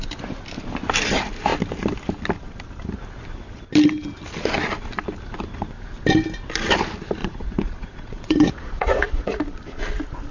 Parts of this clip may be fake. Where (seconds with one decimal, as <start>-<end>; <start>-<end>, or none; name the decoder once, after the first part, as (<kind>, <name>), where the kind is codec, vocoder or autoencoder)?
7.2-9.4 (vocoder, Vocos)